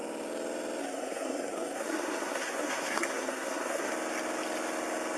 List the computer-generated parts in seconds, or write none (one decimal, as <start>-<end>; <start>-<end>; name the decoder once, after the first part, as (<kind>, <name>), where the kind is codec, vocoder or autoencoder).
0.8-3.9 (codec, SNAC)